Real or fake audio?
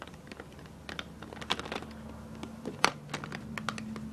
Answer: real